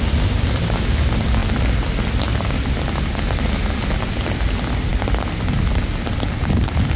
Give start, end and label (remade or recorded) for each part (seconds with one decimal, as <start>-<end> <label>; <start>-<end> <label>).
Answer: 0.0-7.0 recorded